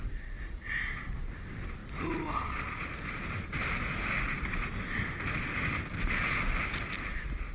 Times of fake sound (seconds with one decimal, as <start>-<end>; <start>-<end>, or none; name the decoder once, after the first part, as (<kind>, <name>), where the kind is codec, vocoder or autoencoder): none